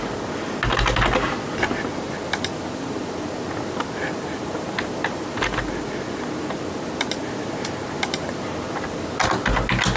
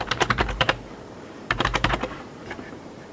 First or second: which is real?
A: first